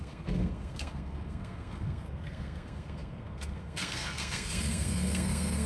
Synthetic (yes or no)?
yes